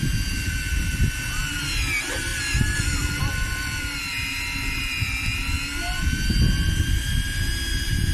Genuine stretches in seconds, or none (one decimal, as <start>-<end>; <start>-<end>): 0.0-8.1